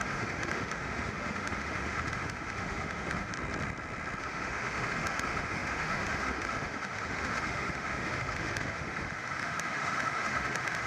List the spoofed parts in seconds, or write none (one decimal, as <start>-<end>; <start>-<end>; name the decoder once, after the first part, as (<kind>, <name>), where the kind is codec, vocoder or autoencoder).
0.0-3.3 (autoencoder, DAC-VAE); 4.2-10.9